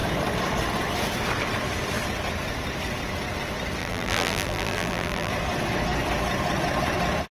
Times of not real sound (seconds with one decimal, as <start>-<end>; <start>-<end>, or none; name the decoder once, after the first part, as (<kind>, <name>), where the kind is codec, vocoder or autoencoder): 3.8-5.3 (vocoder, BigVGAN v2)

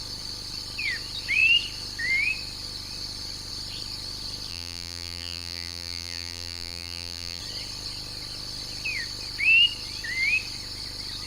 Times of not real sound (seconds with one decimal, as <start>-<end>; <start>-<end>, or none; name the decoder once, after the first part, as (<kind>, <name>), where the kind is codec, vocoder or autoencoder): 4.5-7.4 (vocoder, BigVGAN v2)

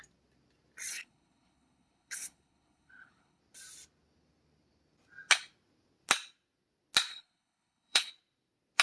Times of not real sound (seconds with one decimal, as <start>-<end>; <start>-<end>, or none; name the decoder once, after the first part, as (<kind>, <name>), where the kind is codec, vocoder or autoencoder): 0.9-3.4 (codec, HILCodec); 7.1-8.1

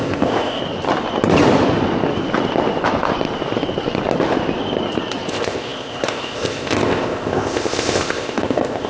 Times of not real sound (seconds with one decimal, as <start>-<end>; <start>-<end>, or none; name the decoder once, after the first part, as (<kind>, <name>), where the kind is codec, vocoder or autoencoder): 0.0-0.6 (codec, ZipCodec); 5.3-8.9

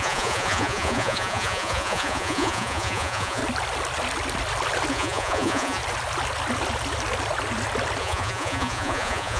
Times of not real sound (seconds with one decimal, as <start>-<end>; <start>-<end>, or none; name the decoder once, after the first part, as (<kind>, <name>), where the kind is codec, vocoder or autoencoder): 0.0-3.4 (vocoder, Vocos); 4.9-5.8; 8.0-9.4

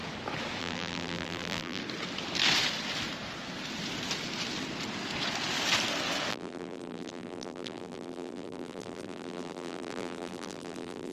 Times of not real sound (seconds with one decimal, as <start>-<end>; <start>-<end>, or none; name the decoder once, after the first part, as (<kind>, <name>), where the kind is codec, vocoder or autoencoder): 0.6-1.8 (vocoder, BigVGAN v2); 6.3-11.1

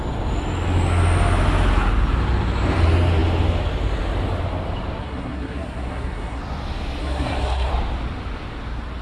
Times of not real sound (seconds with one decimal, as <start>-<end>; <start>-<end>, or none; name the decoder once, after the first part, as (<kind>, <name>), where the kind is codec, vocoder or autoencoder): 5.0-6.4 (codec, SNAC); 7.0-7.7